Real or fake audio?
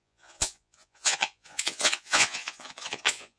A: fake